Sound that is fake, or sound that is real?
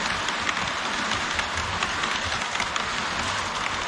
real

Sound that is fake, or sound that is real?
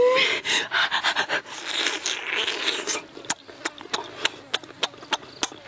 real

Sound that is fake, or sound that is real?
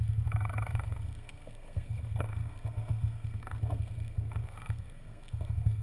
fake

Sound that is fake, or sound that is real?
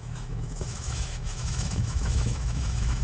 fake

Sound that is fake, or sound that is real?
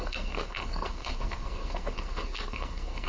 fake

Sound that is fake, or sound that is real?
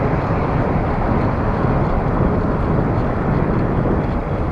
real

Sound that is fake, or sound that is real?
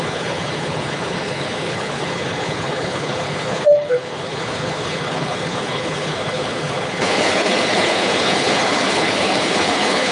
fake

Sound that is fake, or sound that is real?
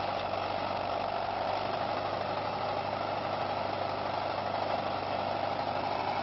real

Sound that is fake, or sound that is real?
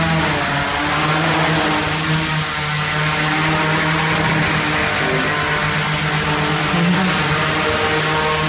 real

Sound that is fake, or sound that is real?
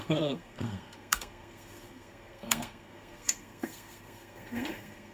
fake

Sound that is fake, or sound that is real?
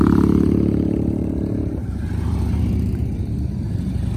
fake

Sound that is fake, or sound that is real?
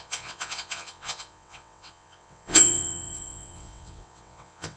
fake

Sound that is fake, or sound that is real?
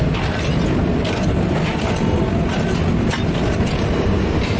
real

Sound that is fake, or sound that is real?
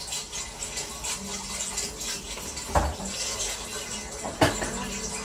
real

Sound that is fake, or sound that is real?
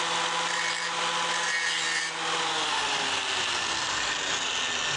real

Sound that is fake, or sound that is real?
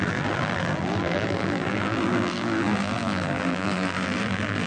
fake